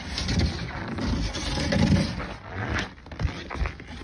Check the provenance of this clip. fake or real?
real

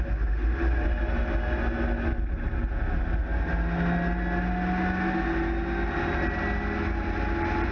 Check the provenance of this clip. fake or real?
real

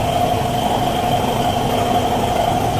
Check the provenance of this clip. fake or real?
real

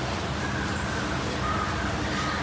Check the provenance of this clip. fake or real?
real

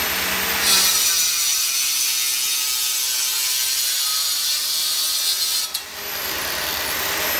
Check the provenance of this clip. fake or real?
real